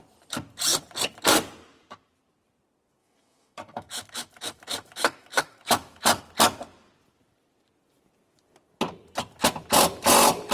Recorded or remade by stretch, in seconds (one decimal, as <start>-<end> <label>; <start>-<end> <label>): 0.0-3.0 recorded; 3.0-6.2 remade; 6.2-10.5 recorded

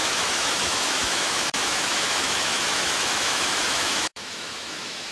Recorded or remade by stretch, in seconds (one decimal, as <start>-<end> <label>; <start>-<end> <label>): 0.0-5.1 remade

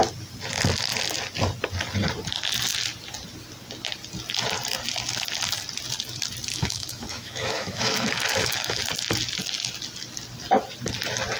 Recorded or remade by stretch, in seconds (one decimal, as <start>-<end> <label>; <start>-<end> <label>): 0.0-6.5 recorded; 6.5-8.8 remade; 8.8-11.4 recorded

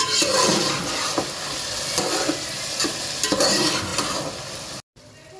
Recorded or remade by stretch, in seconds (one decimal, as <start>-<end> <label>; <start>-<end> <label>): 0.0-5.4 recorded

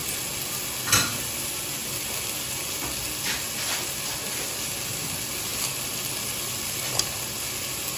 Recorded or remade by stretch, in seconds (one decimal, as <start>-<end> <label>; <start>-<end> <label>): 0.0-8.0 recorded